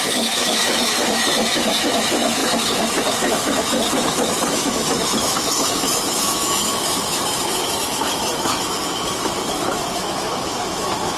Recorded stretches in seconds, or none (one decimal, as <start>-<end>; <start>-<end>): none